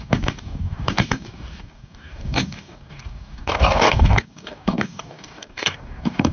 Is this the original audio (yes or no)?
no